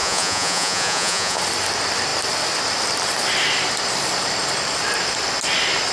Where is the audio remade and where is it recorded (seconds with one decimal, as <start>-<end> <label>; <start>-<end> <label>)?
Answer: 0.0-1.4 remade; 1.4-5.9 recorded